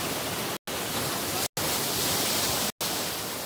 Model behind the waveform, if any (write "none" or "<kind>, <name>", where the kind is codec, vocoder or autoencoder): none